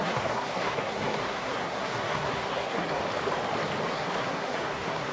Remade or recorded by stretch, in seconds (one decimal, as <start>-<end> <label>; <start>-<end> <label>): 0.0-3.0 remade; 3.0-3.9 recorded; 3.9-5.1 remade